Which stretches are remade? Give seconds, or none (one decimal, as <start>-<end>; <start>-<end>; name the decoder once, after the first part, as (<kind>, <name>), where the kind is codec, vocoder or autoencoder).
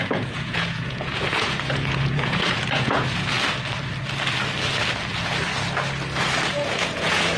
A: 0.0-3.3 (vocoder, Vocos); 6.5-7.4